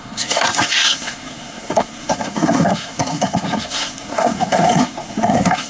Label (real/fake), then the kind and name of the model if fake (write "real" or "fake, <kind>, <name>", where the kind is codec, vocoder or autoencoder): fake, codec, SNAC